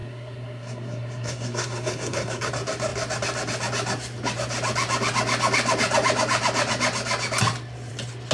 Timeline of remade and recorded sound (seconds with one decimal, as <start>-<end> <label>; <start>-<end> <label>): 0.0-2.5 remade; 2.5-8.3 recorded